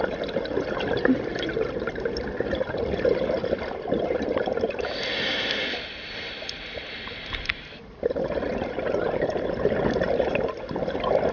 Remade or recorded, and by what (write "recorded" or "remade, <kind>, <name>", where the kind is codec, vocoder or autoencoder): recorded